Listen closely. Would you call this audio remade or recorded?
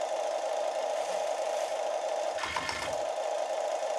recorded